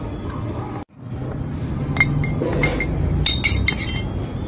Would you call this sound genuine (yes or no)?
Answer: yes